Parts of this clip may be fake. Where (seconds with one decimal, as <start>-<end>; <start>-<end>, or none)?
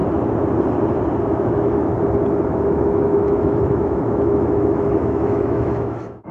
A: 1.3-1.9; 2.5-6.3